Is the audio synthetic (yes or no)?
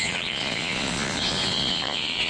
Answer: yes